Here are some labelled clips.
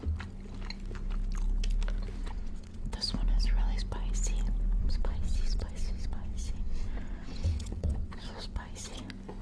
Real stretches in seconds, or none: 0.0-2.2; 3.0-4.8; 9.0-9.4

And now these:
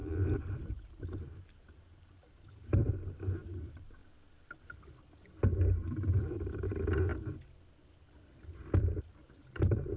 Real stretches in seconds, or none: 4.0-5.7; 7.1-8.9

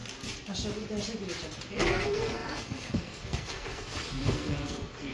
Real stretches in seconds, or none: 0.0-1.7

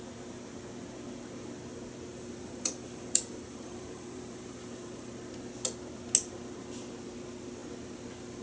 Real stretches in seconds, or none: 0.0-2.1; 5.1-8.4

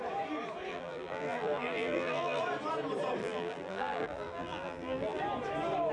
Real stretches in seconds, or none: 0.0-0.7; 2.4-3.2; 5.2-5.9